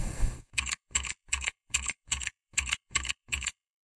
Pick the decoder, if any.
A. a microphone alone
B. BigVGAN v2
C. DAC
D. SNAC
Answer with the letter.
D